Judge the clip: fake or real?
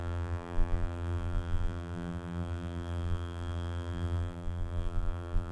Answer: fake